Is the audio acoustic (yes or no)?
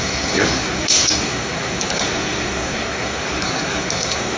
no